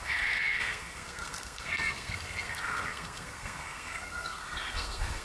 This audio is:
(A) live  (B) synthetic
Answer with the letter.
B